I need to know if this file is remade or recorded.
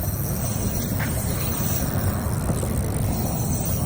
recorded